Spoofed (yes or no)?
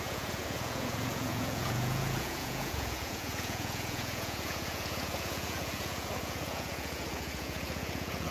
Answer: yes